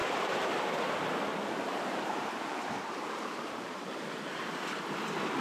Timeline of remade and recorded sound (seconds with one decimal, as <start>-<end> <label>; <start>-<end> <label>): 0.0-0.6 remade; 0.6-1.3 recorded; 1.3-4.5 remade; 4.5-5.4 recorded